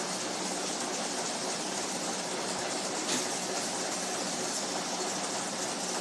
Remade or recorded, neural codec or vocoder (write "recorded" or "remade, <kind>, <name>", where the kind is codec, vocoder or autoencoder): recorded